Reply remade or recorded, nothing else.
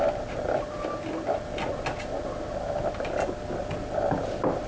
recorded